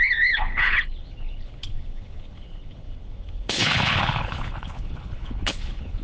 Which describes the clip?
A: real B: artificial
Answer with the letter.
B